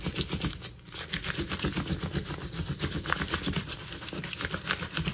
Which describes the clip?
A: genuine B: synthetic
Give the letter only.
A